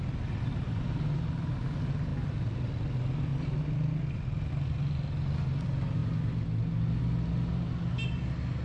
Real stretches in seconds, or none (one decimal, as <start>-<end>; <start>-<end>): 0.0-8.6